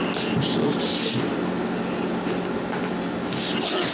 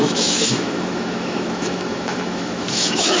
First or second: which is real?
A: first